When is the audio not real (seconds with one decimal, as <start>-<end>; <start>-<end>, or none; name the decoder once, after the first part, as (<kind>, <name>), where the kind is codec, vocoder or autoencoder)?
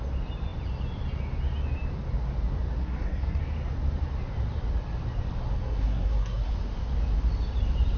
2.8-3.4 (codec, SNAC); 5.5-6.5